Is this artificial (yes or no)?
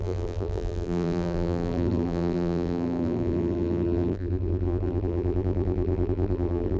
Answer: yes